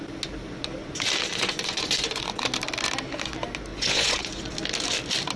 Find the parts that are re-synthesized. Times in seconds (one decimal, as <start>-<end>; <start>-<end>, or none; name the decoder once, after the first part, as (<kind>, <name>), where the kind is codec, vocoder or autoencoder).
1.3-2.4 (vocoder, Vocos); 3.7-4.5